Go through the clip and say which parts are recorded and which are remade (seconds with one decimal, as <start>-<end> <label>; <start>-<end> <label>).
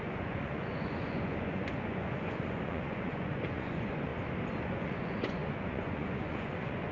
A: 0.0-4.1 remade; 4.1-4.6 recorded; 4.6-6.9 remade